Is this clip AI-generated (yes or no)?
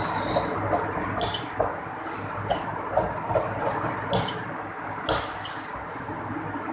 no